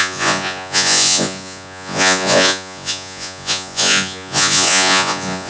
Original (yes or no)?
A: no